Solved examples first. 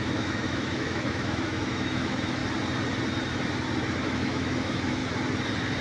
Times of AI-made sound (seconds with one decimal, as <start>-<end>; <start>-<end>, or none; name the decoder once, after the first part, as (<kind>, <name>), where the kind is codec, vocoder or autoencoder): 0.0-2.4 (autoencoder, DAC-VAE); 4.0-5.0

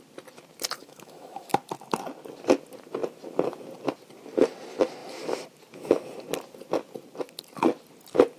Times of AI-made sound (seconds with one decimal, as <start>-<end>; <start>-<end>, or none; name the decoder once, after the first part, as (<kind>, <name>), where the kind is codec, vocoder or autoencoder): 0.8-1.5 (autoencoder, DAC-VAE)

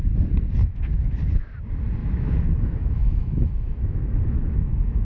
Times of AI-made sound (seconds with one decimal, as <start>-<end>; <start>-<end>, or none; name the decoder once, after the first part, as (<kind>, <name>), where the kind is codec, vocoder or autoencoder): 0.6-1.2 (autoencoder, DAC-VAE); 2.0-5.0

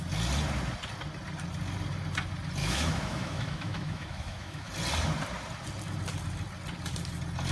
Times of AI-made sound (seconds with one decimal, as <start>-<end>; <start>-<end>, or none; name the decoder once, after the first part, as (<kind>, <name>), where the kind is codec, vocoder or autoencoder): 2.6-4.7 (autoencoder, DAC-VAE)

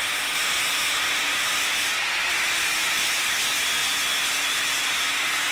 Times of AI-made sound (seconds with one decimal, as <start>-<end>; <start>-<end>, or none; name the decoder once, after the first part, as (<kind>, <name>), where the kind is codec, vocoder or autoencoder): none

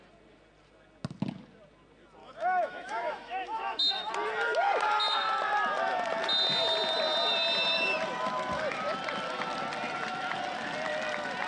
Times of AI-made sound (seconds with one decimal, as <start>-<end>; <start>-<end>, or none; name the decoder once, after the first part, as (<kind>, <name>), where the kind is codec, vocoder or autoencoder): 2.2-4.1 (autoencoder, DAC-VAE)

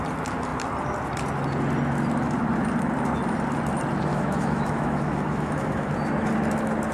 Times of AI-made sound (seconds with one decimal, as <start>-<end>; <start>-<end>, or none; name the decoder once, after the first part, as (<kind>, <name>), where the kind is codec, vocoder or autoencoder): 4.1-5.9 (autoencoder, DAC-VAE)